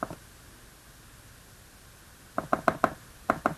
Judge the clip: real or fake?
real